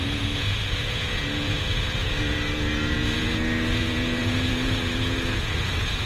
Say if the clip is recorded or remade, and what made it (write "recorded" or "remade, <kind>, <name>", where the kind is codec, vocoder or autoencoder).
remade, vocoder, Vocos